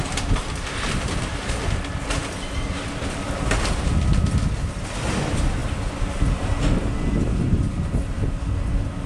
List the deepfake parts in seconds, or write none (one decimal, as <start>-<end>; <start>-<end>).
none